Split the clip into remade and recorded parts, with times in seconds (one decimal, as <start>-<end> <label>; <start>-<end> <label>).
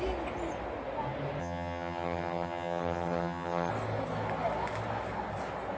0.0-1.4 recorded; 1.4-3.7 remade; 3.7-5.8 recorded